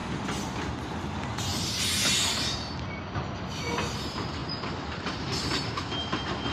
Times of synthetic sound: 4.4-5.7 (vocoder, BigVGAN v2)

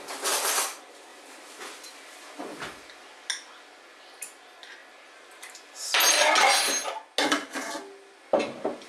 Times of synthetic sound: none

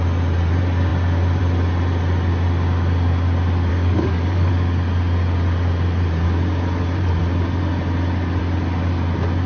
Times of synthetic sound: 3.7-4.5 (codec, DAC)